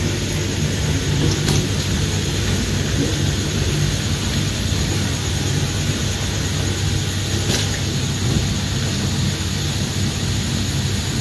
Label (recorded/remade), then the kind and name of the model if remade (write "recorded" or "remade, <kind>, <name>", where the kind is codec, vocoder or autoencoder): recorded